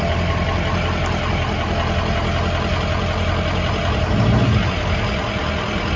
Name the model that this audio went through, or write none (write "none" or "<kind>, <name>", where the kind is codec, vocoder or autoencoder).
none